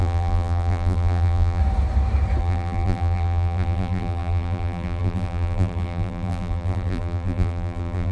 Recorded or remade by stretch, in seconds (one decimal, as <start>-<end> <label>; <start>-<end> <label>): 0.0-1.6 remade; 1.6-2.4 recorded; 2.4-8.1 remade